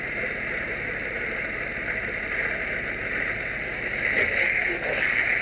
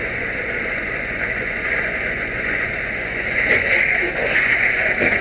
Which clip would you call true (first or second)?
first